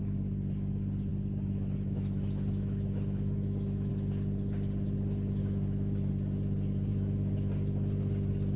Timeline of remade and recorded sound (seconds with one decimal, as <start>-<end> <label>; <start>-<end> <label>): 0.0-1.1 recorded; 1.1-3.9 remade; 3.9-5.4 recorded; 5.4-6.1 remade; 6.1-8.6 recorded